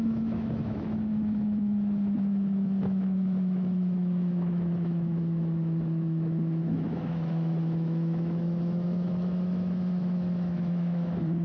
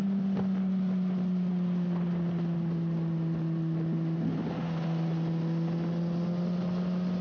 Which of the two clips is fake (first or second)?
first